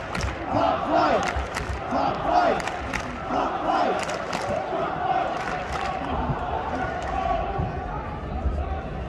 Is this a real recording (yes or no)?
yes